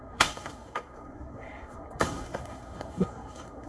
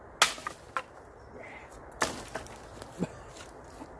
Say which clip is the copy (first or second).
first